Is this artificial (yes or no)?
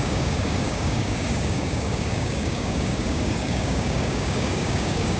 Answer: yes